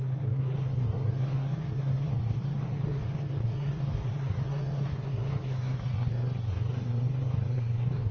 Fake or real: fake